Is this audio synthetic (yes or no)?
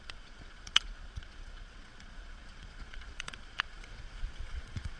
yes